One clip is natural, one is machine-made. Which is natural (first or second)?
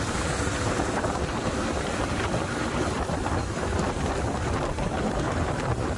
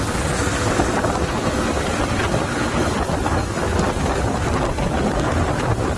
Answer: second